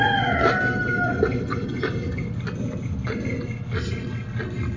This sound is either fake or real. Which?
real